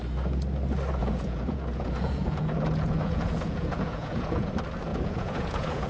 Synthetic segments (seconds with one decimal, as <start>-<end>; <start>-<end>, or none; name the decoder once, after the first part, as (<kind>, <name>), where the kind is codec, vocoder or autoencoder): 1.0-4.5 (vocoder, Vocos); 4.9-5.9